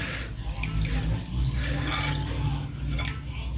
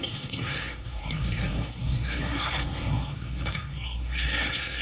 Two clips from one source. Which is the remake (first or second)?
second